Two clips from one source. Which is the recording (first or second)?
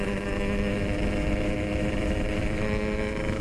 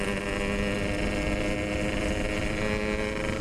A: second